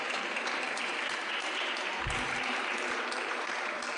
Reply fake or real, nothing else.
fake